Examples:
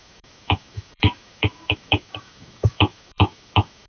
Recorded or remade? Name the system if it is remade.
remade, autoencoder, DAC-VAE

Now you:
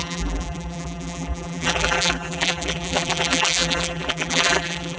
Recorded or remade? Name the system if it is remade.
remade, vocoder, BigVGAN v2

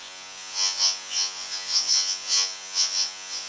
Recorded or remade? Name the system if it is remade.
remade, vocoder, Vocos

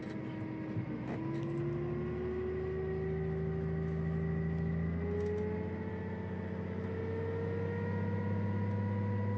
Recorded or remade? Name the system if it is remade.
recorded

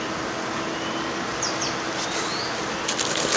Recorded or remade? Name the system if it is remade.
recorded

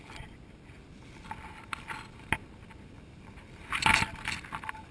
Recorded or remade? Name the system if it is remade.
recorded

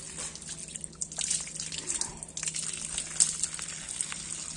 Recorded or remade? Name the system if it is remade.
recorded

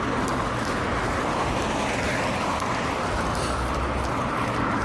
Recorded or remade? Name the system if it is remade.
recorded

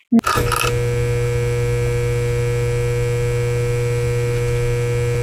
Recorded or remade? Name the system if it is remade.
recorded